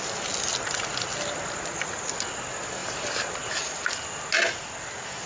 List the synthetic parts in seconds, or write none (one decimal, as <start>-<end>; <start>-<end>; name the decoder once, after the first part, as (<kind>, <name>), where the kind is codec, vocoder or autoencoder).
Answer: 2.8-3.5 (vocoder, BigVGAN v2)